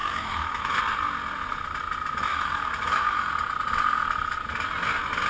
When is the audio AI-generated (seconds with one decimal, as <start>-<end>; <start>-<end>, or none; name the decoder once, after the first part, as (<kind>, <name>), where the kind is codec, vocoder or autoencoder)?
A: 0.0-0.8 (autoencoder, DAC-VAE); 2.3-3.3